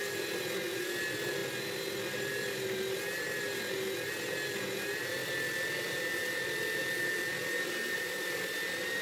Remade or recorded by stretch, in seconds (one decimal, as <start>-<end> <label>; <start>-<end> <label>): 0.0-9.0 recorded